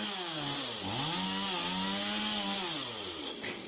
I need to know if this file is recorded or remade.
recorded